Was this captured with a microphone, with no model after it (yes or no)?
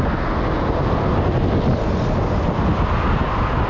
yes